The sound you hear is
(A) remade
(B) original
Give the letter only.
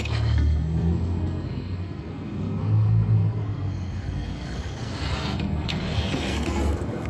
A